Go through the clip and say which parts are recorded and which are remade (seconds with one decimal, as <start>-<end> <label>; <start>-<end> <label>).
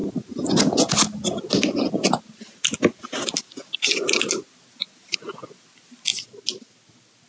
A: 0.0-7.3 recorded